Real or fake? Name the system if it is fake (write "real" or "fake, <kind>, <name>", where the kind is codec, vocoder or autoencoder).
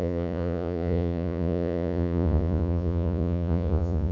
fake, vocoder, Vocos